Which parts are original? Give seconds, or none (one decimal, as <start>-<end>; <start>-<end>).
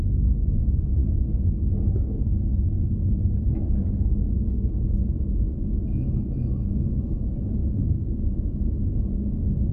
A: 0.0-9.7